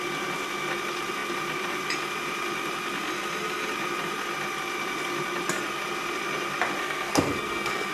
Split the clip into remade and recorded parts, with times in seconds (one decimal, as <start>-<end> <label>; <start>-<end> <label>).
0.0-6.8 recorded; 6.8-7.9 remade